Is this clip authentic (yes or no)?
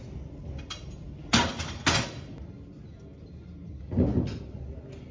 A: yes